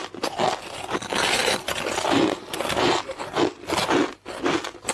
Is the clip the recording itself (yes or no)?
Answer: yes